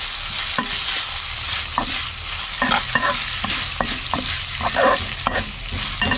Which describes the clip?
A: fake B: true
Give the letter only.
B